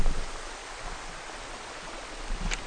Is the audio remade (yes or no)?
no